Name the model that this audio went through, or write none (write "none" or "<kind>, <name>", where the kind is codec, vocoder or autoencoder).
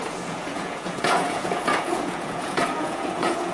vocoder, Vocos